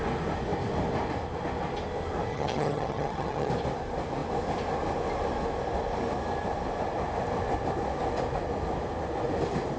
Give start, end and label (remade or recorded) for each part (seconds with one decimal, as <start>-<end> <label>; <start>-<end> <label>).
0.0-2.3 recorded; 2.3-3.5 remade; 3.5-9.8 recorded